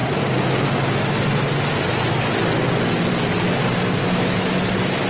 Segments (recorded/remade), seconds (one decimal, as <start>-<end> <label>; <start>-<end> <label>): 0.0-4.0 recorded; 4.0-4.6 remade; 4.6-5.1 recorded